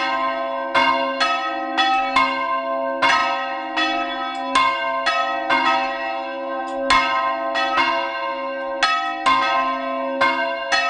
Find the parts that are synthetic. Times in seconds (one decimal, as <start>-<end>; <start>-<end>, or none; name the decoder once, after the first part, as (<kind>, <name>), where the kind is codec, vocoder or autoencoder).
none